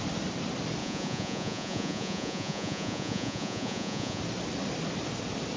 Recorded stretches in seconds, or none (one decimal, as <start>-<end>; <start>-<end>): 0.0-0.8; 4.2-5.6

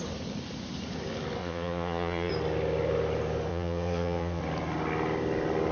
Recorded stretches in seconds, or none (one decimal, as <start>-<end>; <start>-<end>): 0.0-1.4; 2.3-3.5; 4.4-5.7